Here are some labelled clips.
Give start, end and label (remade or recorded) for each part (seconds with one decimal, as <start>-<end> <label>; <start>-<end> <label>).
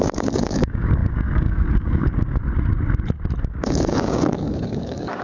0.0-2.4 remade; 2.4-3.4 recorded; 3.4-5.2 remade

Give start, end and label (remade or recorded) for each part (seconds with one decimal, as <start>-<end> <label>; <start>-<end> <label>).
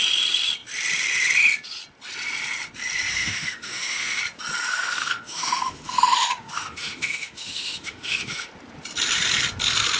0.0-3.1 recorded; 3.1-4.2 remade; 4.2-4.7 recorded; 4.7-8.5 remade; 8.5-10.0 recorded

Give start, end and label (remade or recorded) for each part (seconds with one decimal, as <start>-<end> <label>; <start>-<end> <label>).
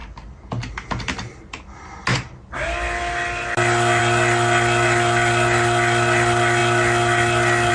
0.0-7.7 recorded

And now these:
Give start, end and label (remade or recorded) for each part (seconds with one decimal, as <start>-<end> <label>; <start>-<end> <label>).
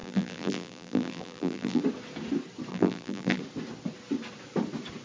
0.0-1.8 remade; 1.8-2.7 recorded; 2.7-3.4 remade; 3.4-5.0 recorded